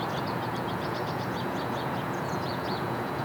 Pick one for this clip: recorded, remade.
remade